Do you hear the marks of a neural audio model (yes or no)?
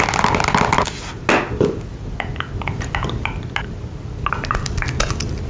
no